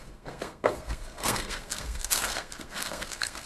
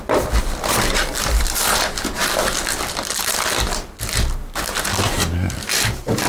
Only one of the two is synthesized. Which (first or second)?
first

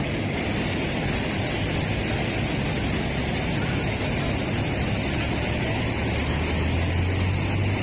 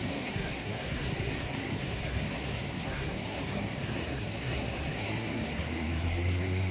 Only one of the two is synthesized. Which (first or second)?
second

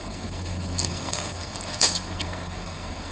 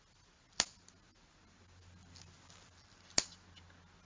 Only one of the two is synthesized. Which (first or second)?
first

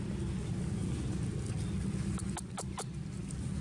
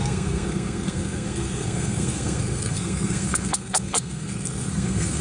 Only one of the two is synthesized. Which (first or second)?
second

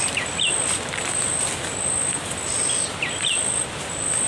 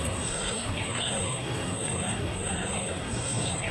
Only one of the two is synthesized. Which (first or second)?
second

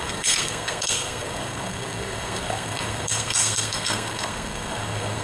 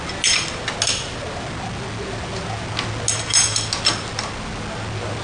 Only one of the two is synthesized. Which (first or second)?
first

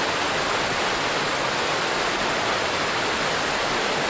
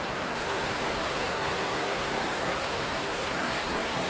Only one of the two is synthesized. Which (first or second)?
second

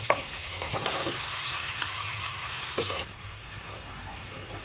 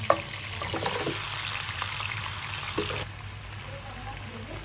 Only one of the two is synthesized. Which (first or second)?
first